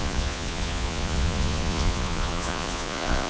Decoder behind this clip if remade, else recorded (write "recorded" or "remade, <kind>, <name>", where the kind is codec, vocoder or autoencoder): remade, vocoder, Vocos